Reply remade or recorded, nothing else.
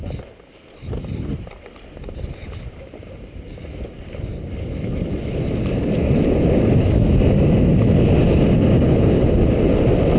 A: recorded